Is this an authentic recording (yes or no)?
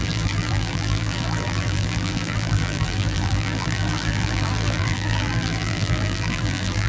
no